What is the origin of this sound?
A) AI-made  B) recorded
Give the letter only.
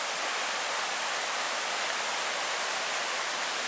B